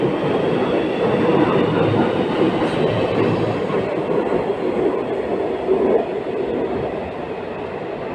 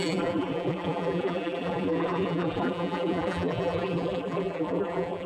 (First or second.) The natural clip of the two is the first